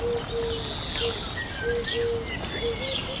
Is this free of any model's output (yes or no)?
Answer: yes